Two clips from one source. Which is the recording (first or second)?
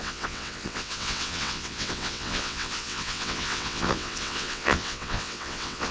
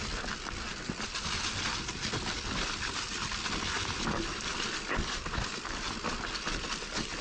second